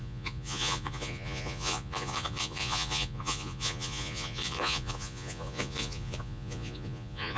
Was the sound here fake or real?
fake